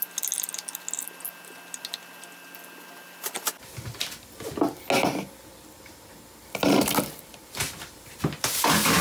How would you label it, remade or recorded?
recorded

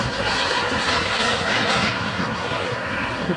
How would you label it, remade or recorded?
remade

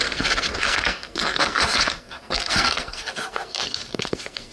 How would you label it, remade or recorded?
remade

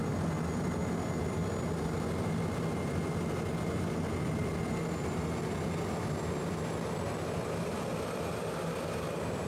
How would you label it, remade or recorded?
recorded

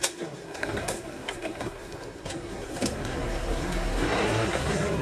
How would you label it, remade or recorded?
remade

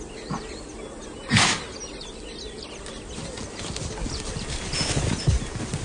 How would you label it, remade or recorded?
recorded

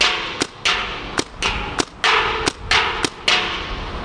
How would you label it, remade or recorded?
recorded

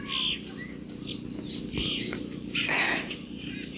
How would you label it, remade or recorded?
recorded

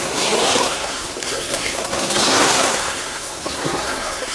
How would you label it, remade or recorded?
remade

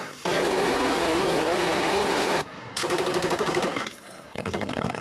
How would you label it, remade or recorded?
remade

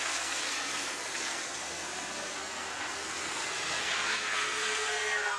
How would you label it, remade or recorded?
remade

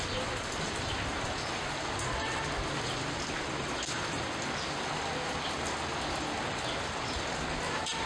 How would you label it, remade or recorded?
recorded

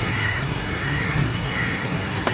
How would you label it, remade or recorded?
remade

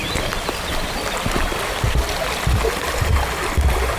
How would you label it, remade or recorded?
recorded